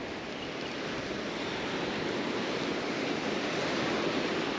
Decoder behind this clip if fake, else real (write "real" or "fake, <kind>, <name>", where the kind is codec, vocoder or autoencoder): real